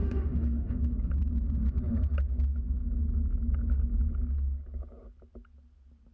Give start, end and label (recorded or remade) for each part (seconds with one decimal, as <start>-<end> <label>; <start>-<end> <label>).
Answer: 0.0-1.1 remade; 1.1-6.1 recorded